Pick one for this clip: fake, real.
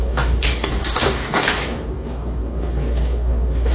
fake